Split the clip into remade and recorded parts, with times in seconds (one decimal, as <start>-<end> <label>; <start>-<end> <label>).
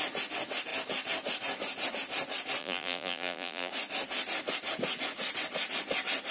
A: 0.0-2.6 recorded; 2.6-3.7 remade; 3.7-6.3 recorded